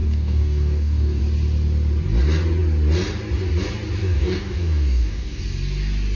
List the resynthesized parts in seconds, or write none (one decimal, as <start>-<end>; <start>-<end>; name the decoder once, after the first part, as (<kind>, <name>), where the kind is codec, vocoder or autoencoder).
0.0-1.2 (codec, DAC); 4.0-5.4